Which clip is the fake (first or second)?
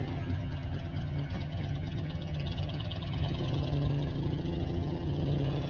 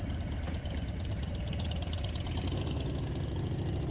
first